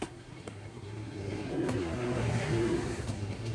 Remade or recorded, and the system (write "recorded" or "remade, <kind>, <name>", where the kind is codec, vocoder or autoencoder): remade, codec, SNAC